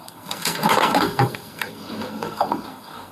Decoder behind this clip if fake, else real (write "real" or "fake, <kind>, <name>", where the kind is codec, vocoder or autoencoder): fake, codec, SNAC